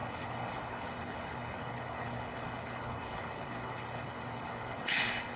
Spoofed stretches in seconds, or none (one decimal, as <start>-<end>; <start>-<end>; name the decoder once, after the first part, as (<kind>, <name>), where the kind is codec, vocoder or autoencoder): 0.0-5.4 (codec, HILCodec)